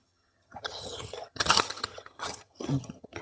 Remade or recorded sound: remade